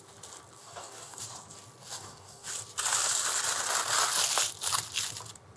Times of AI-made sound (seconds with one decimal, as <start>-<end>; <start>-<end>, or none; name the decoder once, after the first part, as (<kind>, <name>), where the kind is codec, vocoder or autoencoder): 0.6-1.2 (codec, DAC); 1.8-2.5